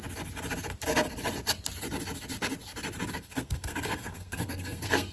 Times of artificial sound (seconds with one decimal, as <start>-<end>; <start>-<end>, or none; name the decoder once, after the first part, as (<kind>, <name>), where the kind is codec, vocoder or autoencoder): 3.1-5.1 (codec, SNAC)